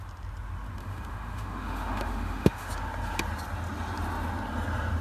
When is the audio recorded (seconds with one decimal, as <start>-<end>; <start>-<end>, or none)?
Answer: 0.0-0.8; 2.7-5.0